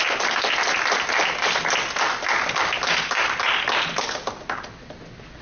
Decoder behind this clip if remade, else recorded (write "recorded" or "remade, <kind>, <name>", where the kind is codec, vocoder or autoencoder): recorded